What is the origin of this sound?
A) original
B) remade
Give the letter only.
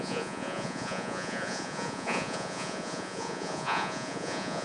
B